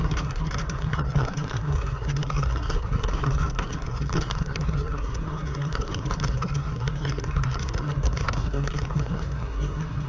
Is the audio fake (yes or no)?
yes